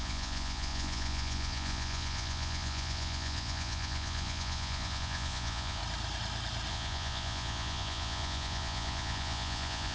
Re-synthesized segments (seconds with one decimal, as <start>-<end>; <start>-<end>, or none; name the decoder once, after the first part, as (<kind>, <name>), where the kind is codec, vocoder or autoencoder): 0.0-5.8 (vocoder, Vocos); 6.7-9.9